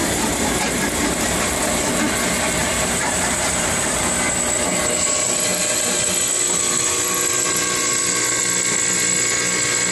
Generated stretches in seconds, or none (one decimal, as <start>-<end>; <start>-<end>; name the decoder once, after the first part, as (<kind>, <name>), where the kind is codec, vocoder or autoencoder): 0.0-2.0 (vocoder, BigVGAN v2); 2.6-4.0